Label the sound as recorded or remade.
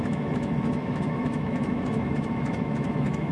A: remade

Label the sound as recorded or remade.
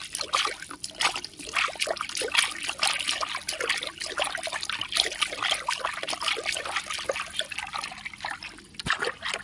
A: recorded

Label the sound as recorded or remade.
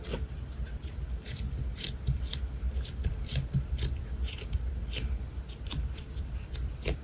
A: recorded